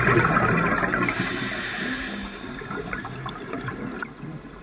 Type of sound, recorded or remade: recorded